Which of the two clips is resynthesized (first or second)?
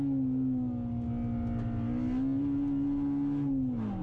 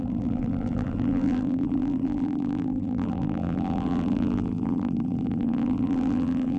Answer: second